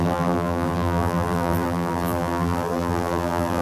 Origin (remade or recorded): remade